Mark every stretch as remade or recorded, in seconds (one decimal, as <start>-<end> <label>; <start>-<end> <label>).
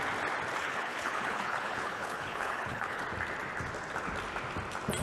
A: 0.0-0.6 recorded; 0.6-3.0 remade; 3.0-5.0 recorded